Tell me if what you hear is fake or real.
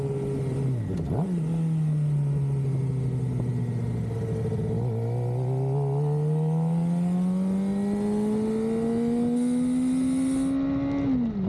real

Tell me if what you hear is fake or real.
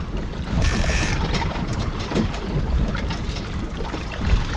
fake